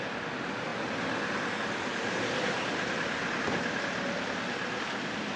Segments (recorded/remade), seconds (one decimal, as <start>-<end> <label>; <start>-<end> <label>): 0.0-5.4 recorded